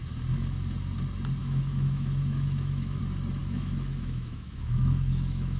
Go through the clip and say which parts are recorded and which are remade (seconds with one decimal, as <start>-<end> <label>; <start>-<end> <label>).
0.0-1.4 recorded; 1.4-3.0 remade; 3.0-3.4 recorded; 3.4-5.6 remade